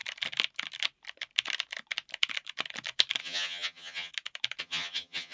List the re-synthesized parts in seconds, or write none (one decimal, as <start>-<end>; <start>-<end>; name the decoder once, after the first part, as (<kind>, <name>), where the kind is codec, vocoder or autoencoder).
3.2-4.1 (vocoder, HiFi-GAN); 4.6-5.3